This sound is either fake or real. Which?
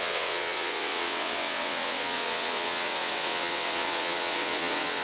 fake